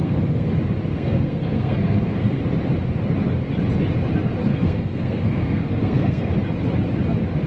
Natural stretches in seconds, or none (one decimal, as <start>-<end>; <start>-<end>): 0.5-0.9; 2.4-4.5; 6.3-7.5